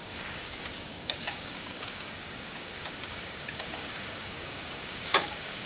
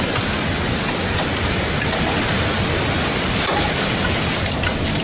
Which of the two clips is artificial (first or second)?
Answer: first